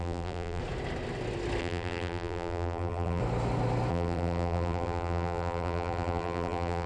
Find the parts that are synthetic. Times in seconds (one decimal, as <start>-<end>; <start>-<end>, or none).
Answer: 0.0-0.6; 1.6-3.2; 3.9-6.9